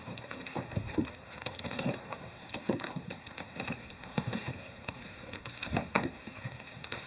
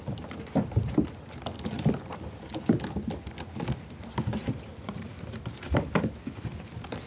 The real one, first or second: second